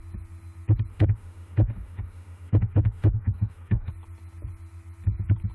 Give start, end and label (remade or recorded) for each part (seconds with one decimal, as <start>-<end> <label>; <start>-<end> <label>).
0.0-0.9 recorded; 0.9-3.9 remade; 3.9-5.5 recorded